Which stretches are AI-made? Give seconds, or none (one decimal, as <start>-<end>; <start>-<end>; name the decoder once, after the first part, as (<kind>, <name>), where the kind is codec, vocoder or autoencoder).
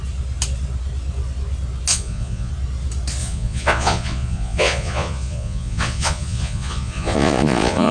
1.9-2.5 (vocoder, Vocos); 3.2-7.9